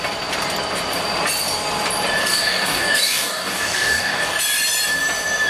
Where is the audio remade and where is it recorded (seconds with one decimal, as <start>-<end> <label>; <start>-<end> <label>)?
0.0-2.2 recorded; 2.2-4.4 remade; 4.4-5.5 recorded